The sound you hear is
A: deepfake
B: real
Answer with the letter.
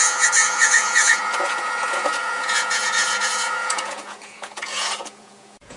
A